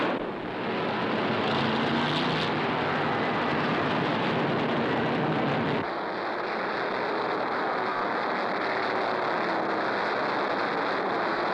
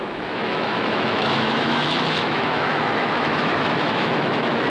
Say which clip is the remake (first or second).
second